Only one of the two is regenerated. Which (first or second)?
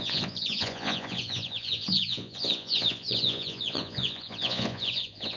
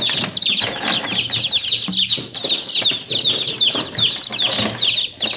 first